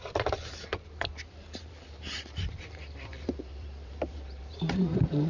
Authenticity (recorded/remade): remade